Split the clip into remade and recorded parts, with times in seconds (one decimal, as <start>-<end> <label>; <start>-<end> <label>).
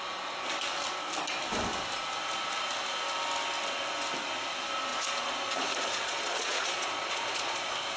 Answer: 0.0-4.9 recorded; 4.9-7.6 remade; 7.6-8.0 recorded